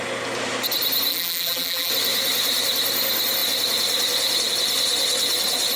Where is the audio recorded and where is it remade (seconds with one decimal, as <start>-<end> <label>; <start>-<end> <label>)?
0.0-1.1 recorded; 1.1-1.9 remade; 1.9-5.8 recorded